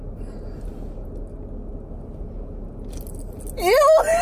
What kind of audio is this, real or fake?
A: real